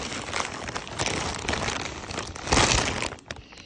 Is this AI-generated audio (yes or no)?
no